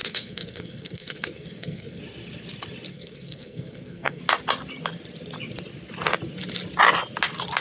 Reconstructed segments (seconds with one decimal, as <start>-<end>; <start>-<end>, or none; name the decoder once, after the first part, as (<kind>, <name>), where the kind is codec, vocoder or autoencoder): 0.0-2.0 (codec, SNAC); 2.9-4.2